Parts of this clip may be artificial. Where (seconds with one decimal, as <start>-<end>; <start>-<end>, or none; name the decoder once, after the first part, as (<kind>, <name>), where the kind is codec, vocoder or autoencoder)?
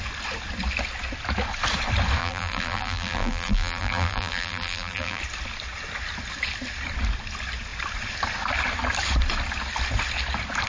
2.2-5.2 (vocoder, BigVGAN v2)